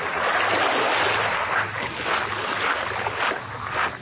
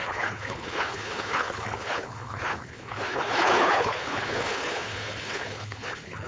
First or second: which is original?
first